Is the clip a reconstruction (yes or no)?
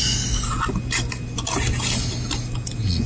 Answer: no